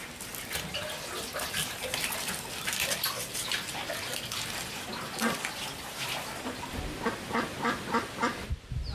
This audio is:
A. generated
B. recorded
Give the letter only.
B